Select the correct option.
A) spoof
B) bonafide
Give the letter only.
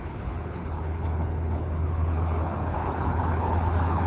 A